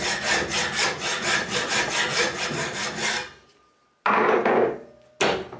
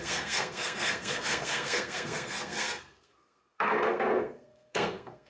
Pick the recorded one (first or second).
first